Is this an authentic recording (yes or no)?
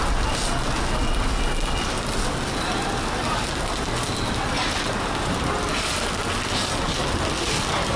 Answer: yes